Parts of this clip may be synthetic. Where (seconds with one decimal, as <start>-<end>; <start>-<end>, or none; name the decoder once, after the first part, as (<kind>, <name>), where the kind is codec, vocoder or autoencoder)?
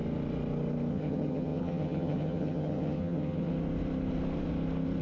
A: 0.9-3.5 (vocoder, HiFi-GAN)